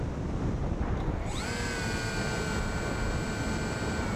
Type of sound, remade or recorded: recorded